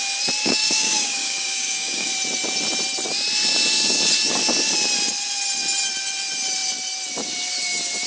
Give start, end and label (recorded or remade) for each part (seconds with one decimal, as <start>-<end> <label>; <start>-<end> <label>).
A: 0.0-0.4 recorded; 0.4-2.1 remade; 2.1-8.1 recorded